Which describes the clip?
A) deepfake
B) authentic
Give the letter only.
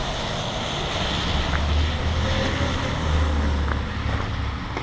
B